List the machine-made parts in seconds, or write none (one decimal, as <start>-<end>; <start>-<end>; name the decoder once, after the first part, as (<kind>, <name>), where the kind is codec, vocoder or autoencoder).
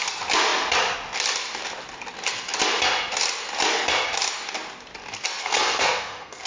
5.4-6.5 (codec, SNAC)